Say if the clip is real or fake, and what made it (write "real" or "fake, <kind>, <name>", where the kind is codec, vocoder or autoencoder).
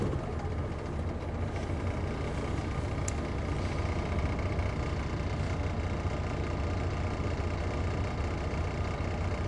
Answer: real